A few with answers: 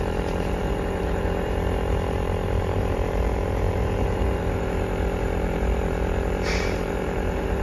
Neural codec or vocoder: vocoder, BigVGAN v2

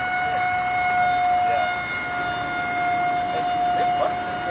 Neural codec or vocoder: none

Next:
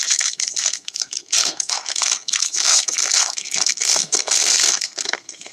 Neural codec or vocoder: codec, SNAC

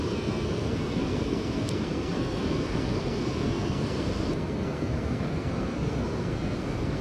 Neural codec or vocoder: codec, SNAC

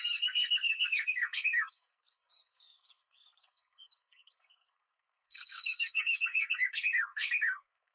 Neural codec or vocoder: codec, SNAC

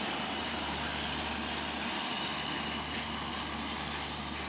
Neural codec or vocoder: none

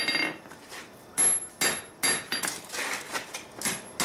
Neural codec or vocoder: none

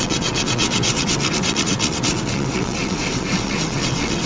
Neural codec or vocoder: vocoder, WaveNeXt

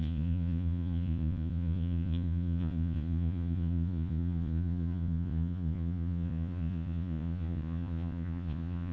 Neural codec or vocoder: vocoder, Vocos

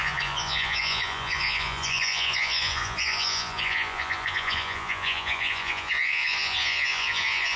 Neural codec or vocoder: vocoder, Vocos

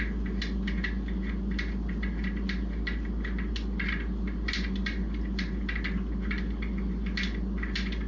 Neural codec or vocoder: none